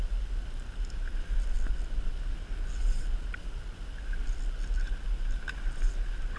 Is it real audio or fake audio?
real